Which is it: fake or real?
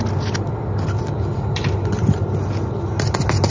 real